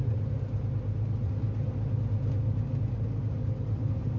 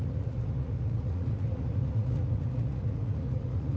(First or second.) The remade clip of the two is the second